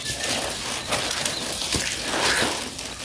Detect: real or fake real